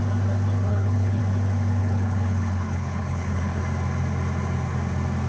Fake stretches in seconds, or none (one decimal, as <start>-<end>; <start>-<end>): 0.7-1.2; 1.8-3.6